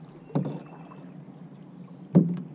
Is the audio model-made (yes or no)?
no